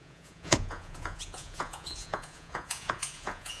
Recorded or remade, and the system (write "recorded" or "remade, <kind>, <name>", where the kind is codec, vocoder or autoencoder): remade, vocoder, Vocos